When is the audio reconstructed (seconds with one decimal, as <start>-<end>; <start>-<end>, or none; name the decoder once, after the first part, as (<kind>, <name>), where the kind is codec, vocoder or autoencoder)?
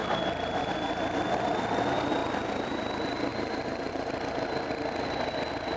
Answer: 2.2-2.9 (vocoder, BigVGAN v2); 3.3-3.9